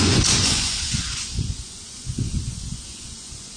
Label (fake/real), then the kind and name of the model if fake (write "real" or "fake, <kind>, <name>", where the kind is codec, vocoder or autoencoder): fake, vocoder, Vocos